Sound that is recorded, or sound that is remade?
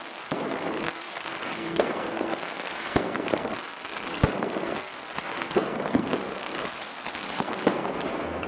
remade